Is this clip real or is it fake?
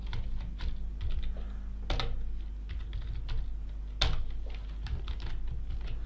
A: real